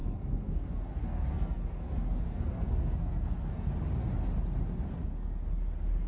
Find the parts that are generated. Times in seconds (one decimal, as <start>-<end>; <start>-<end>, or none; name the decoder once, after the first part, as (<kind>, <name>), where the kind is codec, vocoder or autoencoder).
0.0-3.7 (codec, SNAC); 4.9-5.4